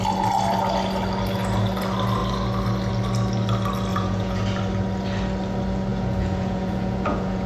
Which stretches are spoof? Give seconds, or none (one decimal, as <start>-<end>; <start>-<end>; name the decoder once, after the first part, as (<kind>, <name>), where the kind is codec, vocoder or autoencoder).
3.9-4.4 (vocoder, Vocos); 5.9-7.5